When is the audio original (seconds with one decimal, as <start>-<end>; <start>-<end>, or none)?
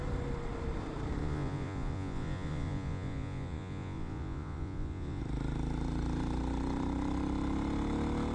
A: 0.0-1.2; 5.2-8.3